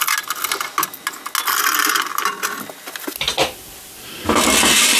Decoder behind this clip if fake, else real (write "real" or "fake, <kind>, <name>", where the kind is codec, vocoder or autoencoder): real